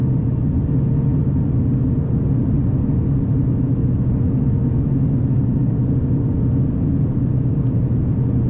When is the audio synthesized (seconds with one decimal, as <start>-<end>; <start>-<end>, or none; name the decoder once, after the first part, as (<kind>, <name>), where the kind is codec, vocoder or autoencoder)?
0.0-1.1 (vocoder, BigVGAN v2); 3.1-3.7; 5.4-8.5